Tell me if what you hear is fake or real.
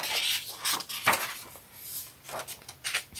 real